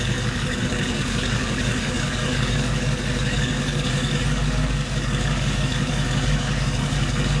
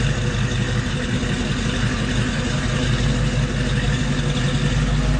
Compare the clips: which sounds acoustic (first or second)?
second